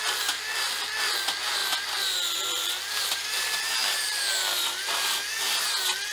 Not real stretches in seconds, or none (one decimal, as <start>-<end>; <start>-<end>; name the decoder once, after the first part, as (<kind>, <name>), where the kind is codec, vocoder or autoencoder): 1.6-5.3 (vocoder, BigVGAN v2)